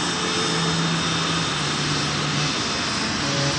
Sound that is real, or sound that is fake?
real